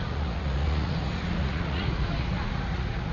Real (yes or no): no